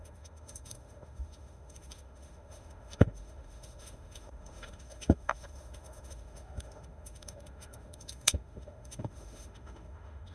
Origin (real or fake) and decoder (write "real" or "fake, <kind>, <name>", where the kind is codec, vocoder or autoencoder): fake, autoencoder, DAC-VAE